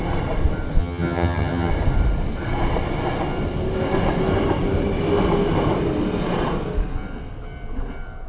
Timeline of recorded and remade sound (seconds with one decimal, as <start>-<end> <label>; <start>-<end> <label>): 0.0-0.8 recorded; 0.8-1.7 remade; 1.7-8.3 recorded